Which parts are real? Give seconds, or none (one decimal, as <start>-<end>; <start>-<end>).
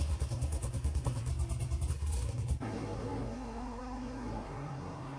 1.3-1.9